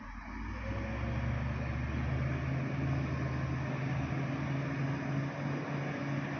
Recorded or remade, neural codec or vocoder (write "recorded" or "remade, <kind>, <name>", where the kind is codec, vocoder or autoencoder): recorded